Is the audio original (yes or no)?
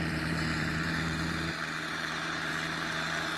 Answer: no